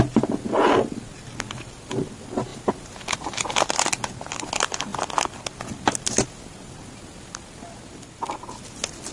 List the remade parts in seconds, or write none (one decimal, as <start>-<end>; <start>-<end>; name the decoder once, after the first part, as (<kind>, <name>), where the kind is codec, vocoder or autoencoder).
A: none